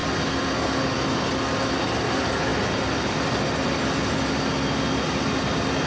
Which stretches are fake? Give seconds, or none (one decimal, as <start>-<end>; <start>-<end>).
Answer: none